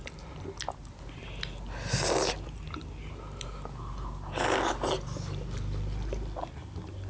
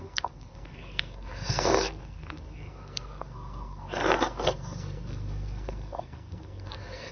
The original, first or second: first